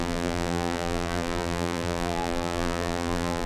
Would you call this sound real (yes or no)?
no